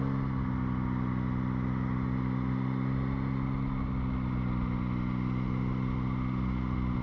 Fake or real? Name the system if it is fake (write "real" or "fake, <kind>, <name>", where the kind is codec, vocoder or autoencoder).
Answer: real